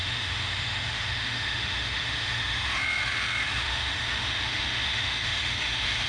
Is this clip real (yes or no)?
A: no